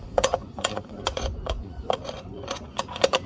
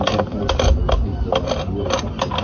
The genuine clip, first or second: second